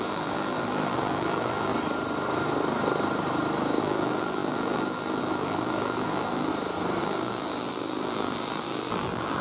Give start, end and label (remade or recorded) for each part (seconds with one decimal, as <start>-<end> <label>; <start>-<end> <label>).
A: 0.0-1.7 remade; 1.7-3.8 recorded; 3.8-6.5 remade; 6.5-7.0 recorded; 7.0-9.4 remade